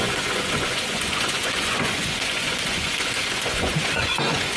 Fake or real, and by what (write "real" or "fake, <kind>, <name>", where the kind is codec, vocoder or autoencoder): fake, vocoder, Vocos